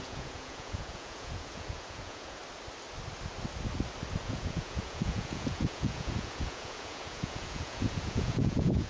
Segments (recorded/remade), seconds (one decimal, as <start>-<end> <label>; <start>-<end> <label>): 0.0-2.4 remade; 2.4-4.2 recorded; 4.2-8.9 remade

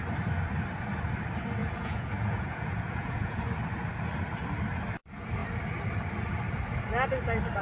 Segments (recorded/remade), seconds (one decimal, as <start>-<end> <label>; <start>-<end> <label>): 0.0-1.6 recorded; 1.6-3.4 remade; 3.4-7.6 recorded

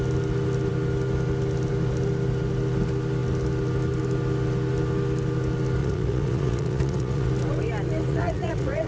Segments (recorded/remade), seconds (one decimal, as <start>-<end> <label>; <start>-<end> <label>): 0.0-5.8 recorded; 5.8-7.3 remade; 7.3-8.1 recorded; 8.1-8.9 remade

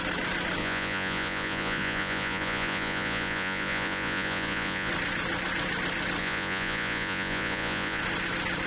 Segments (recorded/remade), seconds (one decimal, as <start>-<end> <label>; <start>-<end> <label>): 0.0-0.6 recorded; 0.6-4.9 remade; 4.9-6.2 recorded; 6.2-8.0 remade; 8.0-8.7 recorded